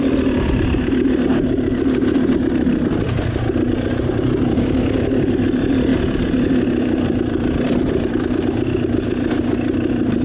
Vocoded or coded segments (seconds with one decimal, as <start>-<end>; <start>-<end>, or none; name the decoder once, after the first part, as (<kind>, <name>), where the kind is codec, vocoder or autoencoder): none